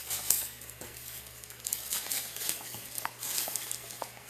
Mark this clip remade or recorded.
remade